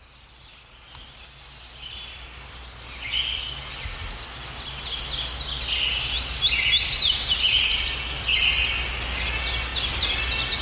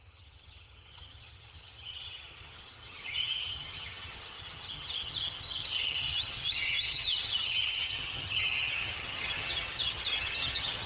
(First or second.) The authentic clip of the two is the first